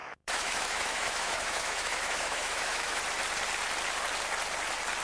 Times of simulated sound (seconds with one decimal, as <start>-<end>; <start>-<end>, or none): 0.0-3.0